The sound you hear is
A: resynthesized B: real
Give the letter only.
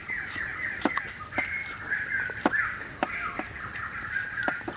B